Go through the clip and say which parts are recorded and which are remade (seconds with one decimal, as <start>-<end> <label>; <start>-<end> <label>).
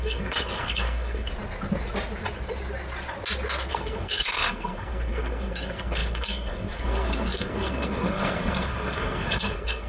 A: 0.0-1.3 remade; 1.3-3.7 recorded; 3.7-9.9 remade